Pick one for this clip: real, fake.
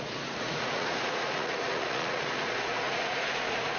fake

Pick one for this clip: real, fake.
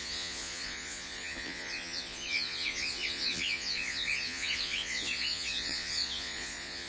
fake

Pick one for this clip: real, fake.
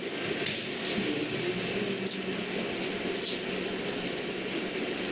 real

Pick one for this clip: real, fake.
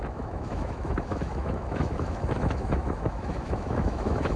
fake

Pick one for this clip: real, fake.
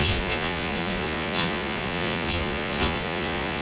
fake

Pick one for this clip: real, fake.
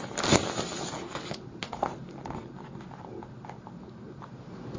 real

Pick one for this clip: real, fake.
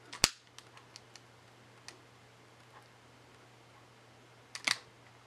real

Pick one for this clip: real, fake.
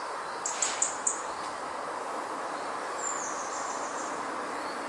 real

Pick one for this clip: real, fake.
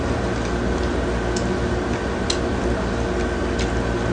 real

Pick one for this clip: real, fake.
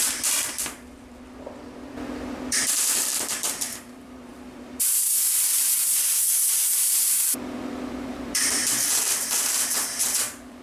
fake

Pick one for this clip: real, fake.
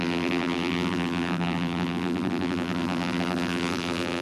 fake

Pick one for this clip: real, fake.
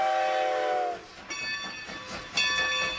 real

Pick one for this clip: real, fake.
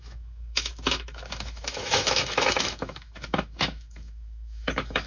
fake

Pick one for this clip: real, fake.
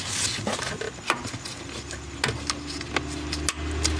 real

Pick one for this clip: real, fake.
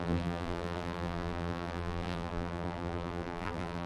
fake